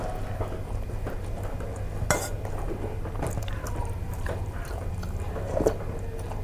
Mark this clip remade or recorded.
recorded